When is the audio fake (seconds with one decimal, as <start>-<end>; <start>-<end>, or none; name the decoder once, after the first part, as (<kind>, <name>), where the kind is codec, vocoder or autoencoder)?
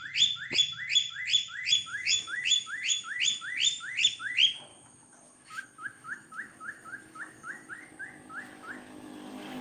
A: 1.9-3.2 (autoencoder, DAC-VAE); 4.7-7.7